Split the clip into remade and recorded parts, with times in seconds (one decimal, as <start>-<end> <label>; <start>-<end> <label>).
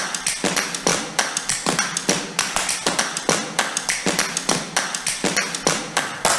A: 0.0-6.4 recorded